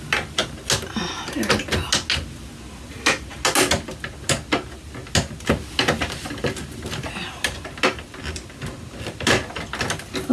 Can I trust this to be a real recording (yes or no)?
yes